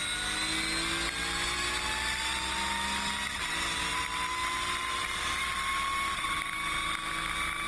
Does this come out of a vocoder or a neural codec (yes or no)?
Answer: no